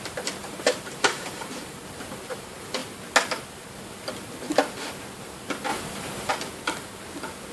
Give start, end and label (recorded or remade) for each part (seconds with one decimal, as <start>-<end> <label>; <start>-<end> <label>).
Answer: 0.0-0.4 recorded; 0.4-1.8 remade; 1.8-5.7 recorded; 5.7-6.3 remade; 6.3-7.5 recorded

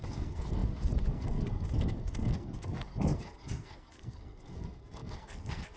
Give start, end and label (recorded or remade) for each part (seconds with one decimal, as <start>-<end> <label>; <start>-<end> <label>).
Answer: 0.0-5.8 remade